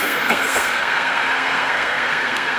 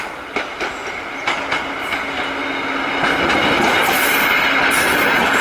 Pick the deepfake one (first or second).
first